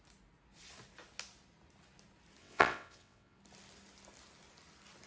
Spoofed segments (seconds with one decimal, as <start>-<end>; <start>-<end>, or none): 2.4-3.4